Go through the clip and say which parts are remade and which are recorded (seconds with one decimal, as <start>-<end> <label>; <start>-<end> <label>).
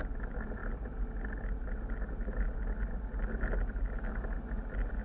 0.0-5.0 recorded